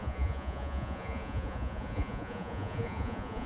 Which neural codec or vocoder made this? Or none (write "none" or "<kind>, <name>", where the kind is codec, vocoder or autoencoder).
vocoder, Vocos